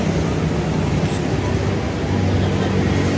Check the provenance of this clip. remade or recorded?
recorded